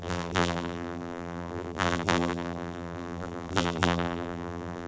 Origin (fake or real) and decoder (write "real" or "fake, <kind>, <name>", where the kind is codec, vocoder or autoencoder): fake, vocoder, BigVGAN v2